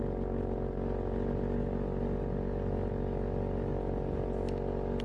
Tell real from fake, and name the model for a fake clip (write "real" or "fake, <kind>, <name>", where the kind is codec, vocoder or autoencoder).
real